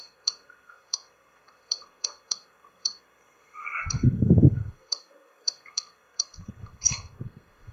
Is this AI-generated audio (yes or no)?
yes